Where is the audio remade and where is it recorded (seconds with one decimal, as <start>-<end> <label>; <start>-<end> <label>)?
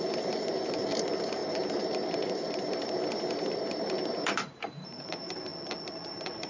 0.0-5.5 remade; 5.5-6.1 recorded; 6.1-6.5 remade